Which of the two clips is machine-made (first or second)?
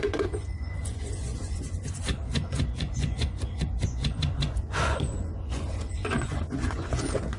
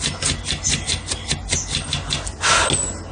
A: first